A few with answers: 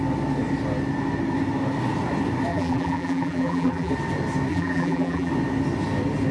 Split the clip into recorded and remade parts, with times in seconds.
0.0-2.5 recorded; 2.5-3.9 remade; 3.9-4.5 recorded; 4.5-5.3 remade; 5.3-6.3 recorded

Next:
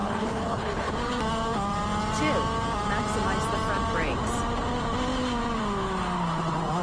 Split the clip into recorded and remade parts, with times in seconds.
0.0-0.9 remade; 0.9-6.8 recorded

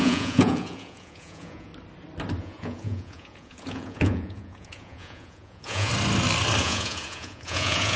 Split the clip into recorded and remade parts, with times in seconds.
0.0-1.7 remade; 1.7-2.4 recorded; 2.4-5.9 remade; 5.9-6.6 recorded; 6.6-8.0 remade

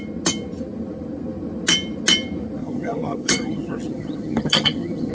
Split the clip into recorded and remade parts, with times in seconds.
0.0-2.6 recorded; 2.6-5.1 remade

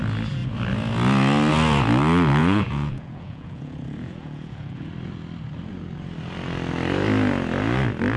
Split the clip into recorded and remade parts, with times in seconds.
0.0-2.4 recorded; 2.4-4.9 remade; 4.9-8.2 recorded